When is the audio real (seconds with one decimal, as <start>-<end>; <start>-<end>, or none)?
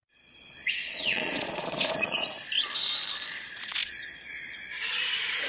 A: 2.3-3.4